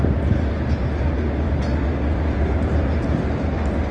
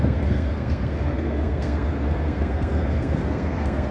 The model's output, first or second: second